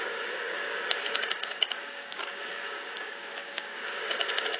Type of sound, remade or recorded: remade